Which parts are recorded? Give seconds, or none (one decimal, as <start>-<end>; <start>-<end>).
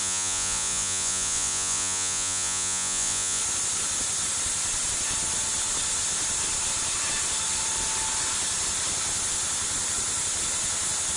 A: 3.4-11.2